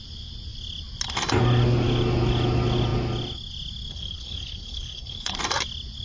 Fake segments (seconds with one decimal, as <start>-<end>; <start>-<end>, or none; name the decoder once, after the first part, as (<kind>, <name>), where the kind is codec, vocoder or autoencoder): 3.9-5.4 (codec, HILCodec)